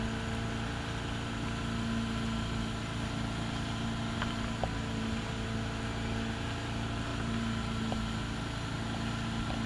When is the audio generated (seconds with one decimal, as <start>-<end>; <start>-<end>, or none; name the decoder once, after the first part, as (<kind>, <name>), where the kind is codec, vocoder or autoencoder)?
none